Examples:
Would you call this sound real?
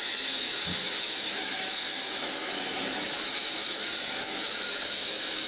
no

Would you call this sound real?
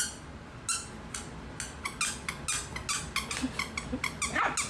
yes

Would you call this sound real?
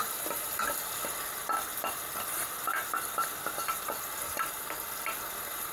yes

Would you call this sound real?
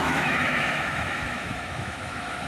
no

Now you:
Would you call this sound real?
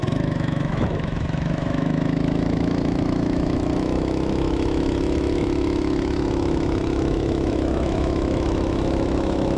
no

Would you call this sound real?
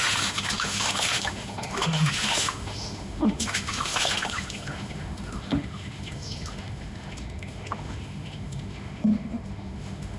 no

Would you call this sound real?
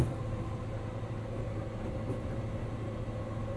yes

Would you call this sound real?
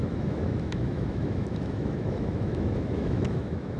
no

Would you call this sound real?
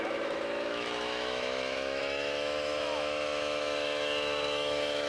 no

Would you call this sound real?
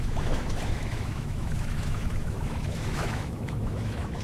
no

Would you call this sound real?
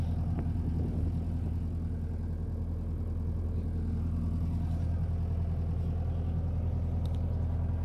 yes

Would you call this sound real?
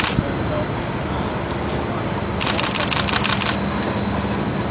yes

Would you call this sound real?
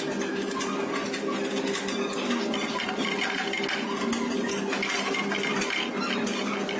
yes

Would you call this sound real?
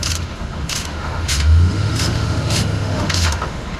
no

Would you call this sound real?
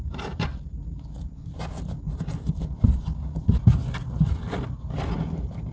yes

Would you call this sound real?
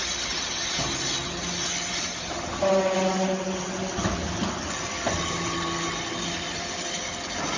yes